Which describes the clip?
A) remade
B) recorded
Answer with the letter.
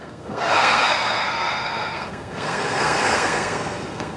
A